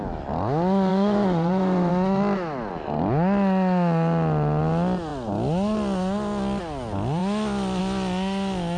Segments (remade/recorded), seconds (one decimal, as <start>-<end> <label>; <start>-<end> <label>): 0.0-0.9 recorded; 0.9-1.9 remade; 1.9-8.8 recorded